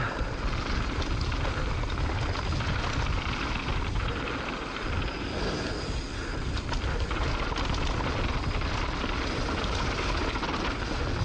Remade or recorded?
recorded